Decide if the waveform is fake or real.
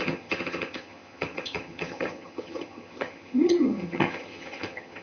fake